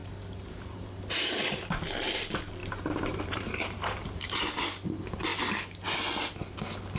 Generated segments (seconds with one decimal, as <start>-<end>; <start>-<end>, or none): 0.0-0.9; 2.6-4.6